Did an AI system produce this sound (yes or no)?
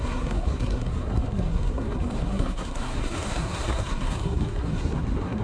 yes